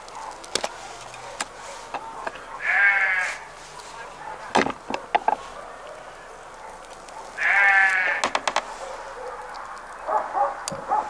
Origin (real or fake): real